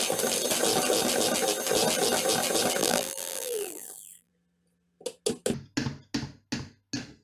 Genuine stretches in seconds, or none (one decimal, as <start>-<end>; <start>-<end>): 0.0-2.8; 4.3-7.2